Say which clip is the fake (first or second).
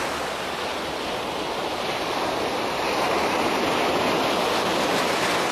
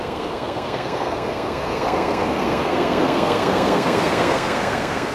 second